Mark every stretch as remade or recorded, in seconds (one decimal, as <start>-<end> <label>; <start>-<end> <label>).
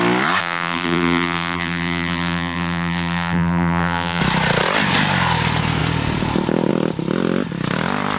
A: 0.0-0.4 recorded; 0.4-4.2 remade; 4.2-8.2 recorded